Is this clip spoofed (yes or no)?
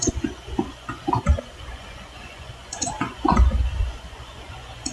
yes